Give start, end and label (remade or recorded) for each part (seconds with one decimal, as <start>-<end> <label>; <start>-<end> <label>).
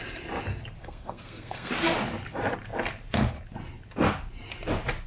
0.0-0.8 recorded; 0.8-1.7 remade; 1.7-5.1 recorded